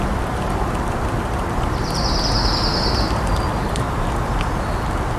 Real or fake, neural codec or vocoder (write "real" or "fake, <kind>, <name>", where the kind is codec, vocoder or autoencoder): real